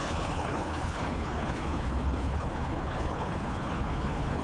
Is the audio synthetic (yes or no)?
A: yes